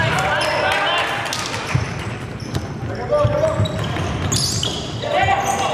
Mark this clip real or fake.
real